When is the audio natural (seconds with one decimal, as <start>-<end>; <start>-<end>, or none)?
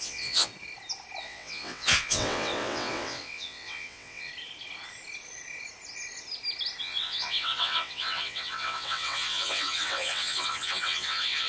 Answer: 0.5-1.2; 4.3-6.8